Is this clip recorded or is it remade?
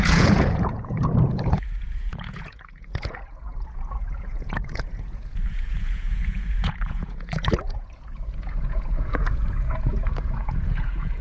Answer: remade